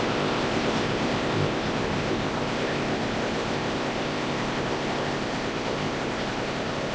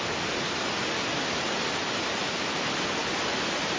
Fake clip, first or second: first